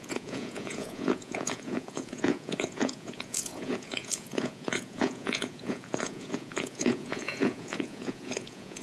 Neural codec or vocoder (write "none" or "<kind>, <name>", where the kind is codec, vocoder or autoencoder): vocoder, Vocos